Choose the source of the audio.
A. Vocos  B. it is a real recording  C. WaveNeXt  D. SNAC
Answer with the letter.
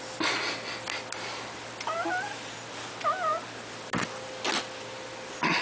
B